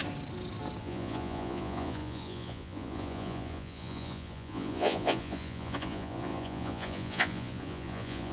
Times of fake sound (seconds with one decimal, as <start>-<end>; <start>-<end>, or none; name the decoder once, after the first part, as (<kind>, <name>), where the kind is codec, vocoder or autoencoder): 0.8-8.3 (vocoder, Vocos)